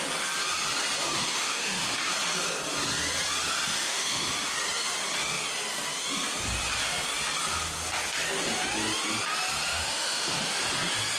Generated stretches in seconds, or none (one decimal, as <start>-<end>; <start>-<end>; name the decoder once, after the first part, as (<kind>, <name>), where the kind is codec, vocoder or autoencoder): 1.3-2.1 (autoencoder, DAC-VAE); 3.7-4.3; 9.7-10.5